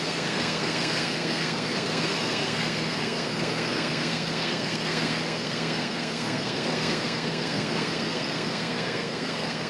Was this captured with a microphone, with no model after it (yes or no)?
no